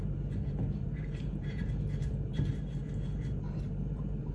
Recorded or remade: remade